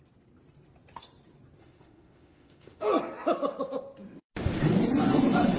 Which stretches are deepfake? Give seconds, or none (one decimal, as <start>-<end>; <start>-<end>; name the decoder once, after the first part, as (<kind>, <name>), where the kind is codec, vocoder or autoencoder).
1.6-2.9 (autoencoder, DAC-VAE)